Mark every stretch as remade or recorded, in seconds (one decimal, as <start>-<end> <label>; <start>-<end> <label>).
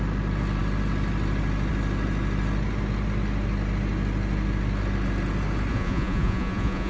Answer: 0.0-5.7 recorded; 5.7-6.9 remade